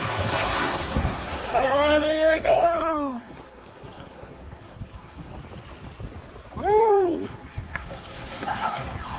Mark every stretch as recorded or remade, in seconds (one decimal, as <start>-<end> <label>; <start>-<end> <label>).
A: 0.0-5.3 remade; 5.3-6.8 recorded; 6.8-9.2 remade

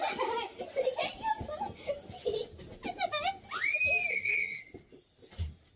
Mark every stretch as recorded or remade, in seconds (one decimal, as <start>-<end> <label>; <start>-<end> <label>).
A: 0.0-4.1 recorded; 4.1-4.6 remade; 4.6-5.8 recorded

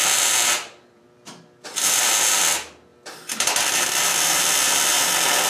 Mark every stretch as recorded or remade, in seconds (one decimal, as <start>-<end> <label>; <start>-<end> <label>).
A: 0.0-2.1 remade; 2.1-2.9 recorded; 2.9-3.5 remade; 3.5-4.1 recorded; 4.1-5.1 remade; 5.1-5.5 recorded

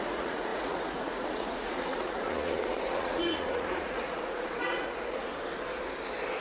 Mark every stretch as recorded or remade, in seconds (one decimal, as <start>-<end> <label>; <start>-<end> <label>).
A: 0.0-5.3 remade; 5.3-6.4 recorded